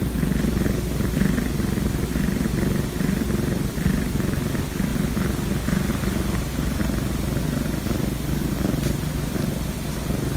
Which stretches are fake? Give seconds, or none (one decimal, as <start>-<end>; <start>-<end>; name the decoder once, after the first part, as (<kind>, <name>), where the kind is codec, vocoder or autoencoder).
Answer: none